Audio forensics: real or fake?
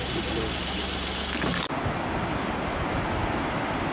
real